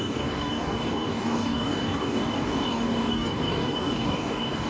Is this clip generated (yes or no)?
yes